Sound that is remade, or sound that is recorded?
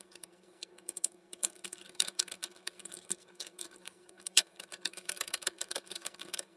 remade